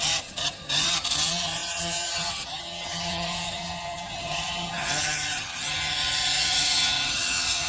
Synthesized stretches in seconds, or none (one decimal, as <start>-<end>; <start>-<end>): 0.0-7.7